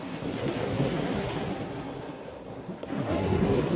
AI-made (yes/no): yes